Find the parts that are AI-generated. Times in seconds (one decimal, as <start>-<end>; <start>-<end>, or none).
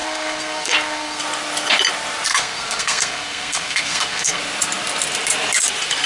0.0-1.2; 2.3-4.4